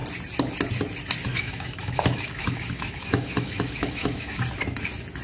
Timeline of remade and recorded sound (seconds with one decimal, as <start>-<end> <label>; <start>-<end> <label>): 0.0-1.3 recorded; 1.3-4.4 remade; 4.4-5.2 recorded